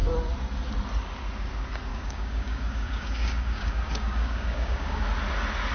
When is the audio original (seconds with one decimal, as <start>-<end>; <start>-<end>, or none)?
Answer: 0.0-1.9; 5.0-5.7